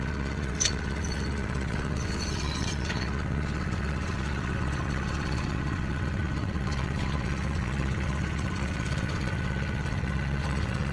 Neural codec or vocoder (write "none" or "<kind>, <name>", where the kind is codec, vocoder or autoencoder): vocoder, WaveNeXt